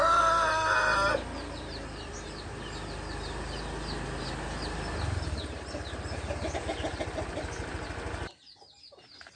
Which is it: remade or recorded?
recorded